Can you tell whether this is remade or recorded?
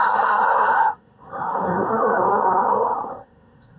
remade